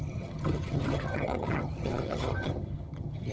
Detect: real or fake fake